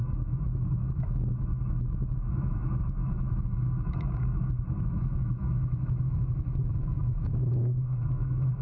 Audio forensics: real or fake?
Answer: fake